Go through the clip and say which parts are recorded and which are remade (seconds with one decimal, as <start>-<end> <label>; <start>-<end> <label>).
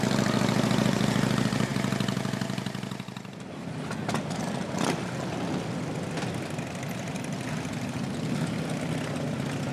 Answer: 0.0-9.7 recorded